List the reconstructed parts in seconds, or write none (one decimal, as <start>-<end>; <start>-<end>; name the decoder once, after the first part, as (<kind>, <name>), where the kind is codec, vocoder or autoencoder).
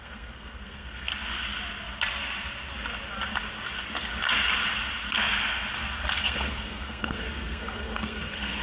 0.0-1.1 (codec, SNAC); 6.2-8.6